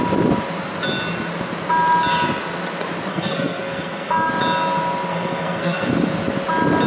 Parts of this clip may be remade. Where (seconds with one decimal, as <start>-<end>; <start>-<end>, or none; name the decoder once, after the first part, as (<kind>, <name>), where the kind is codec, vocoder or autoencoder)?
3.1-4.3 (codec, SNAC); 5.1-5.9